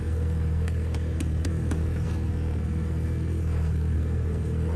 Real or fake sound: fake